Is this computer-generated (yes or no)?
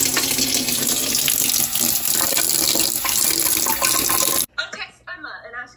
no